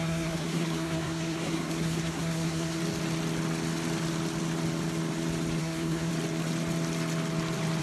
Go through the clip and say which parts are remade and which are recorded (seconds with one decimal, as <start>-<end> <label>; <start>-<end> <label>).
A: 0.0-2.8 remade; 2.8-5.6 recorded; 5.6-6.1 remade; 6.1-7.8 recorded